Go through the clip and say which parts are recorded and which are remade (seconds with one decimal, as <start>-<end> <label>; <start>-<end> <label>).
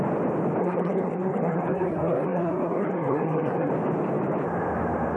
0.0-0.6 recorded; 0.6-3.7 remade; 3.7-5.2 recorded